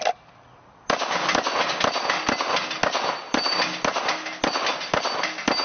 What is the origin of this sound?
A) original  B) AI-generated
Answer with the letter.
A